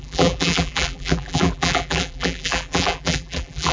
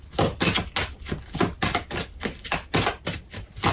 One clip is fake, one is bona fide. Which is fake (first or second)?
first